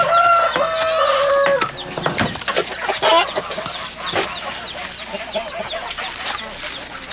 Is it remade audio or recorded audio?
recorded